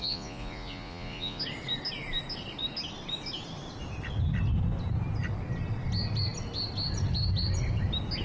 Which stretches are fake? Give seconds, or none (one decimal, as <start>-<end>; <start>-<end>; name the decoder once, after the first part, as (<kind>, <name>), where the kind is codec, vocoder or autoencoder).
0.0-1.4 (vocoder, Vocos)